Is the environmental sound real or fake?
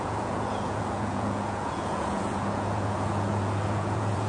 fake